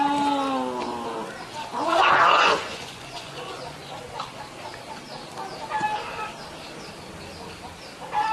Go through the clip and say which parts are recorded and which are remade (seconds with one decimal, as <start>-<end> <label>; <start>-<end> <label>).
0.0-1.7 recorded; 1.7-4.0 remade; 4.0-8.3 recorded